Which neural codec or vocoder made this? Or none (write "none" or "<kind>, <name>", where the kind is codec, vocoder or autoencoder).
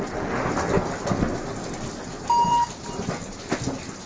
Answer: none